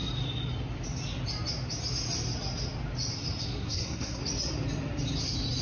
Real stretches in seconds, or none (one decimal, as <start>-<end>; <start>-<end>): 0.0-3.4; 4.2-5.6